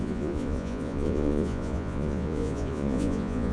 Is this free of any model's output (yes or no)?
no